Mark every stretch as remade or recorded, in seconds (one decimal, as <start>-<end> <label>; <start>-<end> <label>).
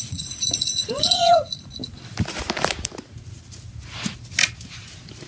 0.0-1.8 remade; 1.8-5.3 recorded